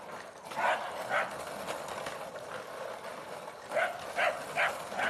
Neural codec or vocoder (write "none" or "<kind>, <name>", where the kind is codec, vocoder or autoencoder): none